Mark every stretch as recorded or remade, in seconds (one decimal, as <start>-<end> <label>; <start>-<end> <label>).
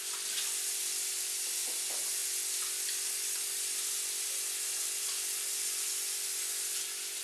0.0-7.2 recorded